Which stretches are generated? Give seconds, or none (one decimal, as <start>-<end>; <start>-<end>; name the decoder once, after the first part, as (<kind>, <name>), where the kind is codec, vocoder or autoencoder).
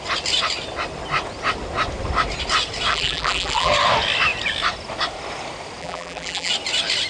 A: 2.9-3.7 (vocoder, BigVGAN v2); 5.8-6.5